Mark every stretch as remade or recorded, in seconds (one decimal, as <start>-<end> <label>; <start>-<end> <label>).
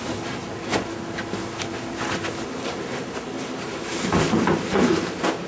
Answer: 0.0-5.5 recorded